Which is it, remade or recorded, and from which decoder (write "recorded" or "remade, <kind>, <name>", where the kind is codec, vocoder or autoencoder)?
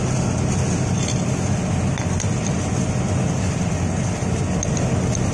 recorded